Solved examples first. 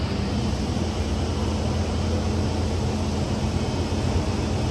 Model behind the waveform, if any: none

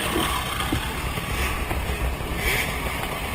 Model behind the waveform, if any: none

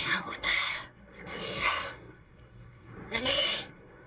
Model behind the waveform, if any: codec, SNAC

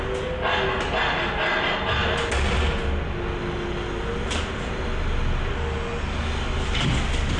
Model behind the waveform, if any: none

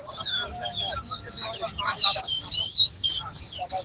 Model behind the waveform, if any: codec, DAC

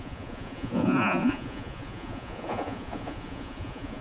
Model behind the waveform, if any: vocoder, Vocos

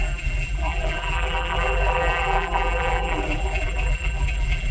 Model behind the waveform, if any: vocoder, BigVGAN v2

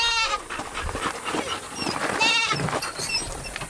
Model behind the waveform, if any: none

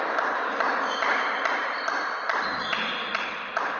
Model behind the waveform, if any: none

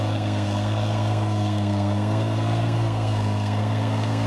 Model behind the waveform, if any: codec, SNAC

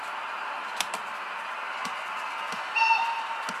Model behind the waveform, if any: none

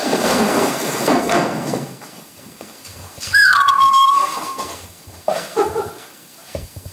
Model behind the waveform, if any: codec, SNAC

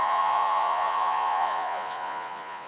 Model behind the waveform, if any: vocoder, Vocos